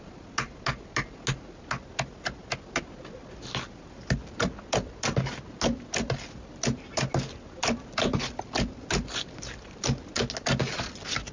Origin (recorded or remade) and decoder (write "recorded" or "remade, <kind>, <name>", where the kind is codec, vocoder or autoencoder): recorded